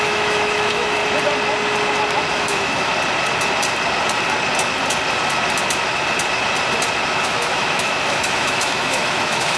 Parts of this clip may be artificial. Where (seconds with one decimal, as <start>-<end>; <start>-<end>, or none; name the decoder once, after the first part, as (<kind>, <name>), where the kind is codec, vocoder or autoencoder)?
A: 0.0-1.0 (autoencoder, DAC-VAE); 2.3-2.9; 7.1-9.6